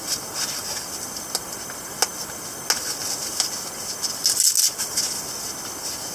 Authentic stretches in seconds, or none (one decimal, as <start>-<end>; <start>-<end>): 0.0-6.1